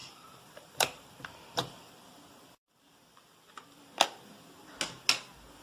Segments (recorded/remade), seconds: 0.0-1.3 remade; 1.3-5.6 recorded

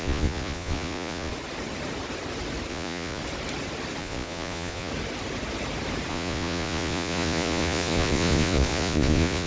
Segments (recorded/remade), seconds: 0.0-1.3 remade; 1.3-2.7 recorded; 2.7-3.2 remade; 3.2-4.0 recorded; 4.0-4.9 remade; 4.9-6.1 recorded; 6.1-9.5 remade